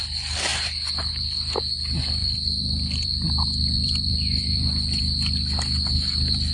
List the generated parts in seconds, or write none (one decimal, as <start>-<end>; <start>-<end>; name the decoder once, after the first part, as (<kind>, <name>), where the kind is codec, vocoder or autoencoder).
2.2-5.0 (vocoder, BigVGAN v2)